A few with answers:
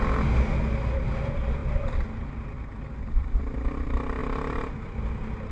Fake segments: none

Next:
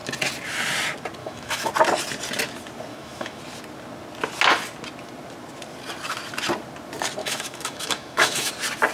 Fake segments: 1.2-1.7 (autoencoder, DAC-VAE); 2.9-3.4; 7.2-8.5

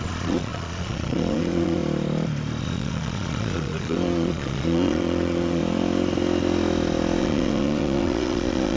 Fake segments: 0.0-1.8 (vocoder, Vocos); 2.6-5.6; 7.2-8.8

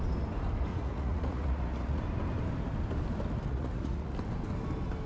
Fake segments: 0.7-2.0 (vocoder, Vocos); 3.5-4.1

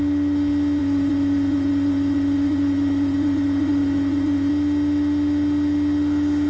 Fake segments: 0.8-4.5 (vocoder, Vocos)

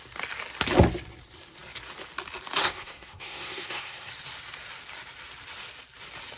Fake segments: 2.6-4.1 (codec, SNAC)

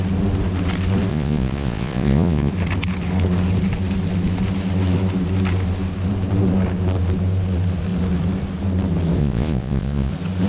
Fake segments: 1.1-2.5 (vocoder, Vocos); 9.2-10.1